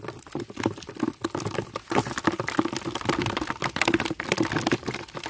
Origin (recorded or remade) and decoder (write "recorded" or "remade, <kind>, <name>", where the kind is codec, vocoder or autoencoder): recorded